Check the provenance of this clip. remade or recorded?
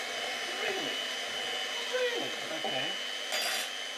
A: recorded